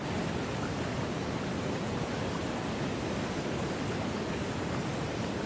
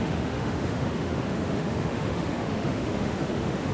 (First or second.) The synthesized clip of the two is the second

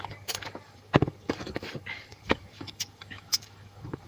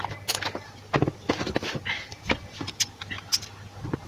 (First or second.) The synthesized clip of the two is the first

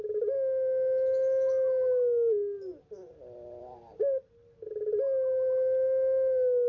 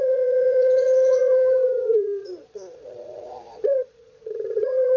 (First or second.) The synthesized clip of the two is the second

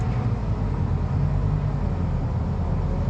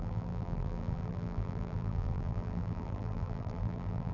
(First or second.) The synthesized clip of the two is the second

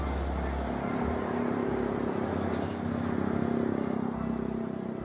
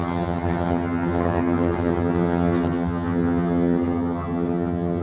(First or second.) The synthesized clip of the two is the second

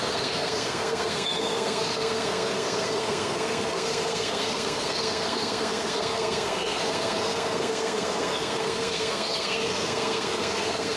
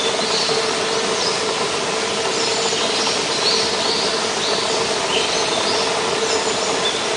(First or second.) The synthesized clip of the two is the first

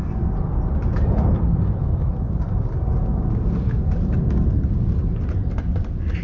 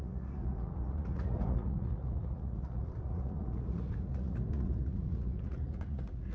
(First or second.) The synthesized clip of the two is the second